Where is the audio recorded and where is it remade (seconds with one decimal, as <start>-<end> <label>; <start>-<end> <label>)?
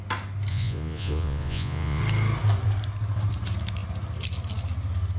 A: 0.0-0.5 recorded; 0.5-2.0 remade; 2.0-5.2 recorded